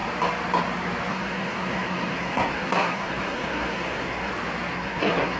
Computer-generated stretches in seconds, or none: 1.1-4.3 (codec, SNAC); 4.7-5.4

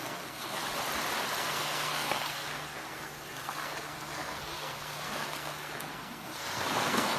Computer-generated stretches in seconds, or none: 0.0-0.6 (codec, SNAC); 1.4-7.2

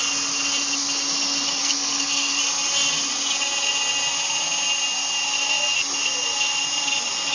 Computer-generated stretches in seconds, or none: 1.6-2.4 (codec, SNAC)

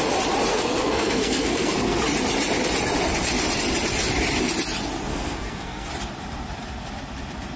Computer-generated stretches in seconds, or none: 0.5-2.0 (codec, SNAC); 5.1-5.9

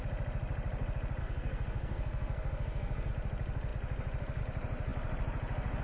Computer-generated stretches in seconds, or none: 1.2-3.1 (codec, SNAC)